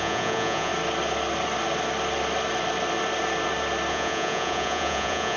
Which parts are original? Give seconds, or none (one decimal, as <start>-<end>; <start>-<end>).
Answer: 0.7-3.9